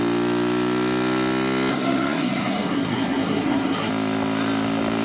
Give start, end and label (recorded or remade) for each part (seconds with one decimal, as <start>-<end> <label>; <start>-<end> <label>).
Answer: 0.0-1.7 recorded; 1.7-3.9 remade; 3.9-5.0 recorded

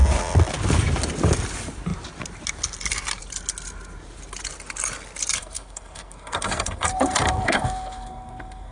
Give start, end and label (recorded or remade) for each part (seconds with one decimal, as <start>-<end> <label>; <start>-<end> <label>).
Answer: 0.0-5.4 recorded; 5.4-8.7 remade

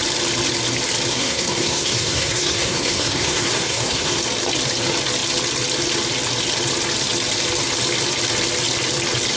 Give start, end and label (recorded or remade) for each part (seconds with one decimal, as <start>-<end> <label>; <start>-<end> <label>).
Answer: 0.0-1.1 recorded; 1.1-4.2 remade; 4.2-9.4 recorded